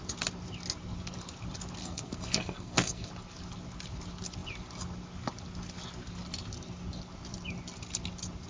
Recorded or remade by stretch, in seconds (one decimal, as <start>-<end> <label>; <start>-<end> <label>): 0.0-1.8 recorded; 1.8-3.1 remade; 3.1-8.5 recorded